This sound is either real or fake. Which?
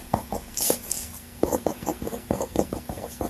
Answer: fake